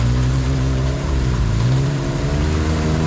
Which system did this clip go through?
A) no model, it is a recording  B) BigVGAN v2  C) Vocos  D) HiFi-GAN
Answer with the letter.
B